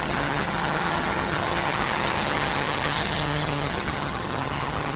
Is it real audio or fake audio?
fake